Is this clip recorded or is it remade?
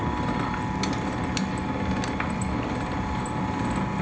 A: recorded